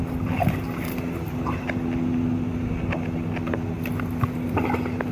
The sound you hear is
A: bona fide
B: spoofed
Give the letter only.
A